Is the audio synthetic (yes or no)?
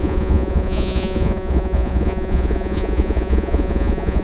yes